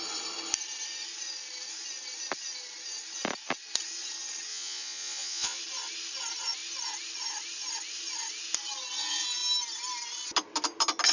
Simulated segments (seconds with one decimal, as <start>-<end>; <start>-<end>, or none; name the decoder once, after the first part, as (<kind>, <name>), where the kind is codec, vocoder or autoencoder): 4.5-5.6 (vocoder, Vocos)